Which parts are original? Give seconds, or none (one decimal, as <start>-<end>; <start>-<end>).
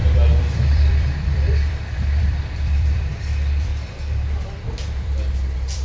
3.7-5.0